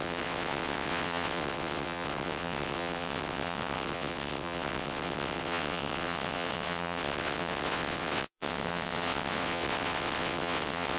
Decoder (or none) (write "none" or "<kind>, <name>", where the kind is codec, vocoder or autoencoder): vocoder, WaveNeXt